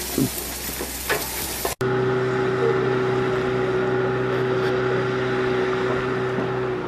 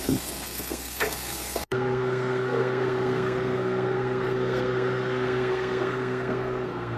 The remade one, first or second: second